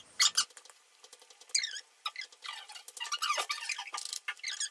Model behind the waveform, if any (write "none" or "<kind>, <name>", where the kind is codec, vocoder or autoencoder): none